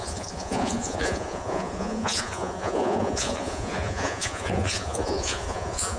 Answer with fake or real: fake